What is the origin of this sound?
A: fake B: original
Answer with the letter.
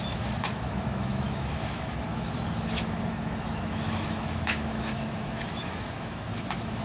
A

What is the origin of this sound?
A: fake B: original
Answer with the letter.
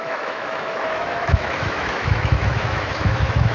A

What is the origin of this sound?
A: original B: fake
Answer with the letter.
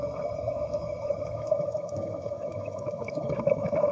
B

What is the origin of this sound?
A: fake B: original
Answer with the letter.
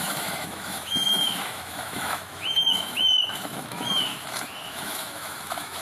A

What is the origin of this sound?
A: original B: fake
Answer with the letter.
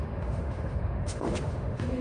B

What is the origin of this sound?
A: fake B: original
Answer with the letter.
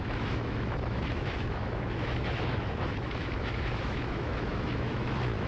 A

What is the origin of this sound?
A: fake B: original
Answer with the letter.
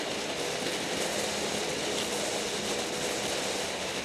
B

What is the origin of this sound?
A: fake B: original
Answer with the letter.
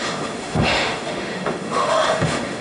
A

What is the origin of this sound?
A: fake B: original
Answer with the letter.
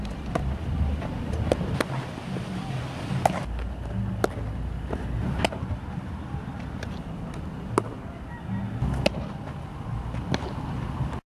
B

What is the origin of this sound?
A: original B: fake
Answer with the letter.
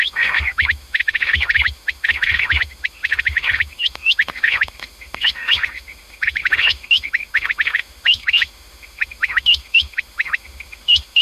B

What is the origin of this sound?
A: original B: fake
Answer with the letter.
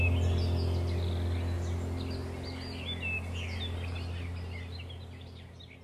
A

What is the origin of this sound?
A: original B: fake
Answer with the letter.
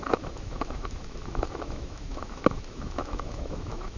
B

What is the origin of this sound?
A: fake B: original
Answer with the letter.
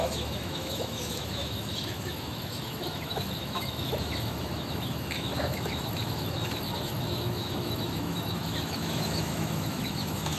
A